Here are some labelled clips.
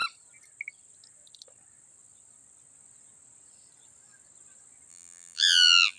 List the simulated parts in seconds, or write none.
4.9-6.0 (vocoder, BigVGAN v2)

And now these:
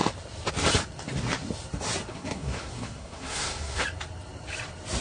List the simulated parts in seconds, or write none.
2.1-3.8 (codec, SNAC)

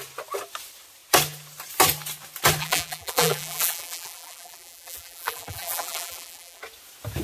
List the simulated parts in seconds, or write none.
2.6-6.6 (vocoder, BigVGAN v2)

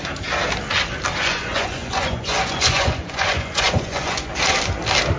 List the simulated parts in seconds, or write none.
1.2-4.3 (vocoder, Vocos)

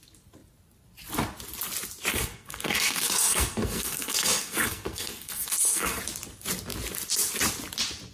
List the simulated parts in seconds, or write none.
2.1-6.0 (codec, SNAC)

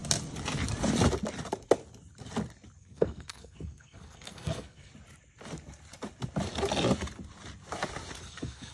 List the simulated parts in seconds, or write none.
2.8-4.9 (codec, SNAC); 8.2-8.7

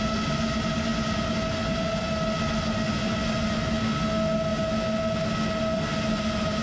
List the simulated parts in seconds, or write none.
none